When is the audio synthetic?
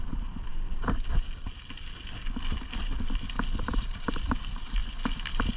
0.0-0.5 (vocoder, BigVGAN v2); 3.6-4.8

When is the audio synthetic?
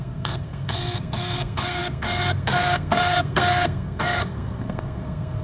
0.0-5.4 (codec, SNAC)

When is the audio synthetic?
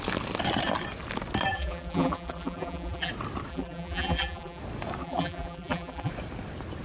1.5-3.1 (vocoder, BigVGAN v2); 3.5-4.6; 5.0-6.1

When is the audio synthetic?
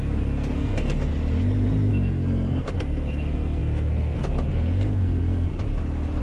0.0-1.1 (codec, SNAC); 1.9-5.5